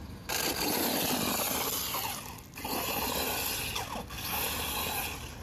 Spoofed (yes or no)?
no